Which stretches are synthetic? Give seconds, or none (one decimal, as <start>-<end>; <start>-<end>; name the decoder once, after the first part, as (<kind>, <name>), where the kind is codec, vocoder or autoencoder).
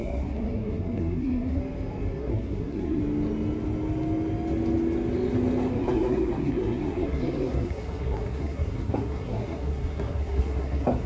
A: 0.0-1.6 (codec, SNAC); 2.2-3.0; 5.7-11.1